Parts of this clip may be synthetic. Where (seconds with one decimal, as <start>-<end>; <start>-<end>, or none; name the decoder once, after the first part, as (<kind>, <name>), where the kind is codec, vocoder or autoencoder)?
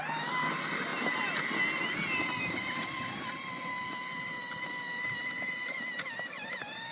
none